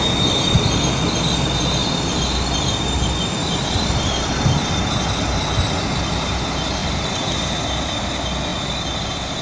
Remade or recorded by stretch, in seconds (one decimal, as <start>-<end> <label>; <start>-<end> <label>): 0.0-9.4 recorded